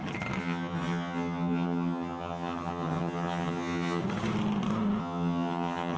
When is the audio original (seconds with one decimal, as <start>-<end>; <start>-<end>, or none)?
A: 0.0-0.4; 4.0-5.0